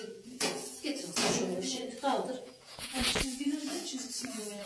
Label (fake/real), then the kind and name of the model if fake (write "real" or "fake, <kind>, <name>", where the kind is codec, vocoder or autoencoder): fake, vocoder, Vocos